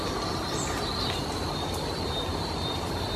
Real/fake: real